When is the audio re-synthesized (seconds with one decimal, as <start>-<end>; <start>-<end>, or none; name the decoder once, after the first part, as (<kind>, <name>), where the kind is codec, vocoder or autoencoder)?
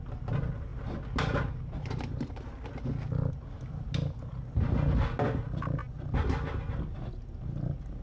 none